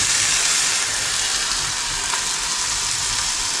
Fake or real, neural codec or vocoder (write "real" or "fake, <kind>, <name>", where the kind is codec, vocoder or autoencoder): real